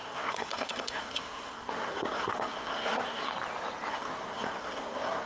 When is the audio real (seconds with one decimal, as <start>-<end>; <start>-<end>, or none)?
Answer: 3.3-3.9